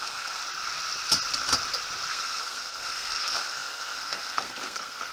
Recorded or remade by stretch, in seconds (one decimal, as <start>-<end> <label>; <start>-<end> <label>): 0.0-0.4 remade; 0.4-2.1 recorded; 2.1-5.1 remade